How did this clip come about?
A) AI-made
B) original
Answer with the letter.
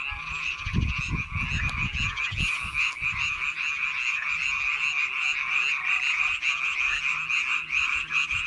B